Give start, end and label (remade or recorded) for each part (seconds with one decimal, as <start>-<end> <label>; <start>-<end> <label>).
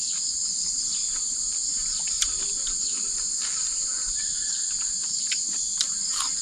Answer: 0.0-0.4 recorded; 0.4-4.2 remade; 4.2-6.4 recorded